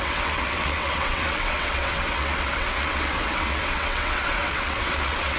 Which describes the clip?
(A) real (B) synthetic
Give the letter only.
B